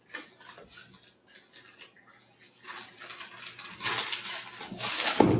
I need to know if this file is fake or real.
real